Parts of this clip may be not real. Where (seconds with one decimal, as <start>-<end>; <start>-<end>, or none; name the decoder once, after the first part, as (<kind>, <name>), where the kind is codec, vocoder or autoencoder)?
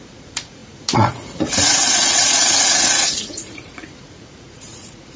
0.0-5.2 (vocoder, Vocos)